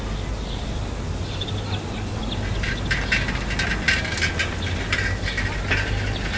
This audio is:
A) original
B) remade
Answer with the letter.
A